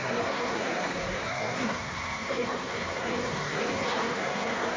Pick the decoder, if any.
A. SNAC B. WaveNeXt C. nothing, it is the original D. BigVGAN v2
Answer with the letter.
A